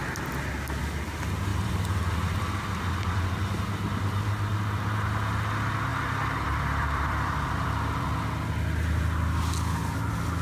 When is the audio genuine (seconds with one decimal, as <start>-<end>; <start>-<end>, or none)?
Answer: 0.0-1.5; 3.6-5.9; 8.3-10.4